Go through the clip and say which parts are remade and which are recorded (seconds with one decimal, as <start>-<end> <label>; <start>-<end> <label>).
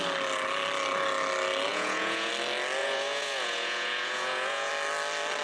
0.0-1.7 recorded; 1.7-2.3 remade; 2.3-2.8 recorded; 2.8-4.7 remade; 4.7-5.4 recorded